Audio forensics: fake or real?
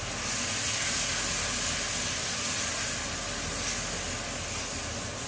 real